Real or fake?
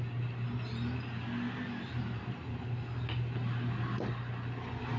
real